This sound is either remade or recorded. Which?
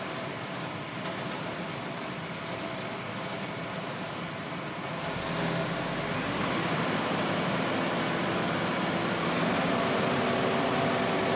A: recorded